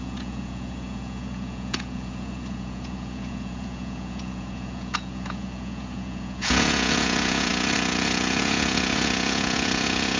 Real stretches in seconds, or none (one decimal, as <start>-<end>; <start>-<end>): none